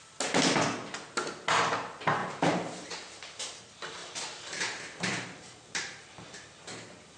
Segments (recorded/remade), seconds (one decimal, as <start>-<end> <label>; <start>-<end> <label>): 0.0-2.2 recorded; 2.2-3.2 remade; 3.2-4.0 recorded; 4.0-6.6 remade; 6.6-7.2 recorded